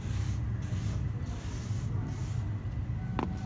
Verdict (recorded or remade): recorded